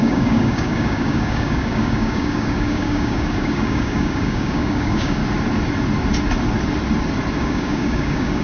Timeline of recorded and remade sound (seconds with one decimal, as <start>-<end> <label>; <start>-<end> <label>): 0.0-5.2 remade; 5.2-7.4 recorded; 7.4-8.4 remade